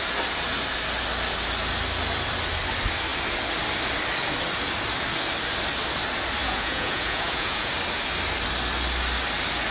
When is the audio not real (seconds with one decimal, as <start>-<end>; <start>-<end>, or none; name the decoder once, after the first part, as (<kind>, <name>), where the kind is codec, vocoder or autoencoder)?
6.4-7.7 (vocoder, Vocos)